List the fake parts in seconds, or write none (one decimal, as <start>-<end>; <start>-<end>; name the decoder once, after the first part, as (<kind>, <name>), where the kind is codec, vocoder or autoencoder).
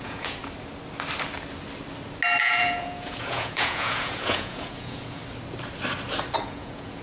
0.0-0.4 (vocoder, Vocos); 2.4-5.2; 6.4-7.0